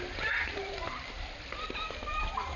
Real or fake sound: fake